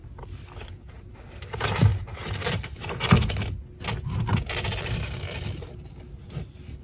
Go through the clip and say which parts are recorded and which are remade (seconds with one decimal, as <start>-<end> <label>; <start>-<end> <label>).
0.0-6.8 recorded